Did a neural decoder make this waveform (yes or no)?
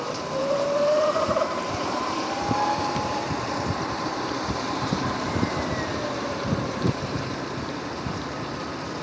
yes